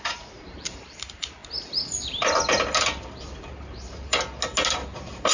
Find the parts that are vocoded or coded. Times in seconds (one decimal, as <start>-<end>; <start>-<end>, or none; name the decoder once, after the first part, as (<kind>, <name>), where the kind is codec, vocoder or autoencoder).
0.0-1.4 (vocoder, BigVGAN v2); 3.4-4.1; 4.7-5.3